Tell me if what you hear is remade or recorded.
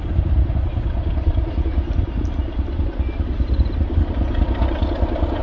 recorded